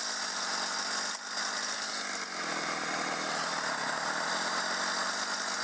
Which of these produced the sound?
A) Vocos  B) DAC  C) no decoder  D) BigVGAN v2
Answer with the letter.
C